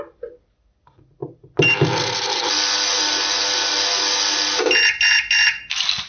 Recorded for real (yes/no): yes